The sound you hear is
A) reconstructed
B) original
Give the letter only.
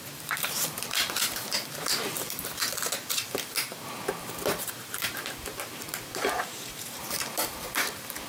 A